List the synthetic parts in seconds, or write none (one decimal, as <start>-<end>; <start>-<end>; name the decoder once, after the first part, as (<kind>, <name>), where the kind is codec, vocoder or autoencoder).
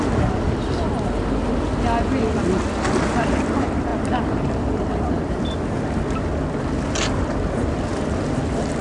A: none